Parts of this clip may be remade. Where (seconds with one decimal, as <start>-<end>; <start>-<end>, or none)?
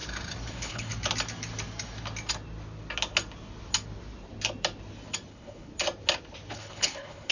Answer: 0.5-0.9; 5.3-5.7; 6.5-7.3